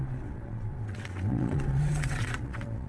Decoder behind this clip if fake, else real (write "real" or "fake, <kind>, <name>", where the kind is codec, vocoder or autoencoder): fake, vocoder, WaveNeXt